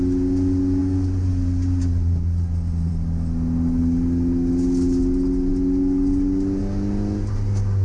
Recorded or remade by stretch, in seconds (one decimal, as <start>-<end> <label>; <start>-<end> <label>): 0.0-7.8 recorded